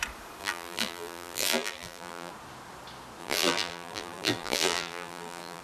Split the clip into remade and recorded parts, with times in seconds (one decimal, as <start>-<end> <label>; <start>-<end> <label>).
0.0-0.4 recorded; 0.4-2.3 remade; 2.3-3.2 recorded; 3.2-5.6 remade